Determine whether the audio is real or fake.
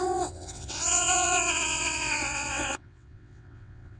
fake